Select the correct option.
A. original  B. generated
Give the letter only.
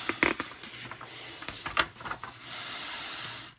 A